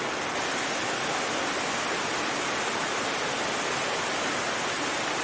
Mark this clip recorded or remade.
recorded